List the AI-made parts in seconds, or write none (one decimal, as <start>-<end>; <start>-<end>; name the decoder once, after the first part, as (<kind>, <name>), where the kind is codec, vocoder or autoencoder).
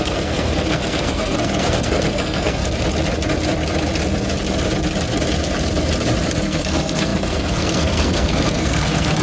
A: 0.0-2.6 (codec, SNAC); 6.4-9.2